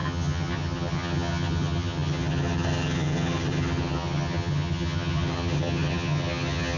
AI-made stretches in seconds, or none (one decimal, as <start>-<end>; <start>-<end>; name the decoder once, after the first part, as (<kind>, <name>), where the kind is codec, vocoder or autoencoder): 0.0-6.8 (vocoder, HiFi-GAN)